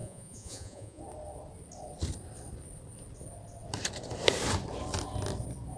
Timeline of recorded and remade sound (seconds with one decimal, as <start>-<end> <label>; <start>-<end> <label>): 0.0-1.0 remade; 1.0-5.8 recorded